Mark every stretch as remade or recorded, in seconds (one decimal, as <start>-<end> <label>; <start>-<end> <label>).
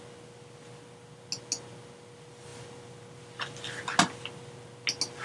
0.0-5.2 recorded